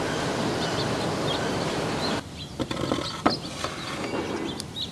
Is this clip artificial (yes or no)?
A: no